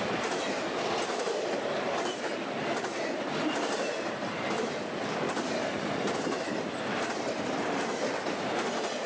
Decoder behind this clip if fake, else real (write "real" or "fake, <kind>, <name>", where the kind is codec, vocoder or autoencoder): real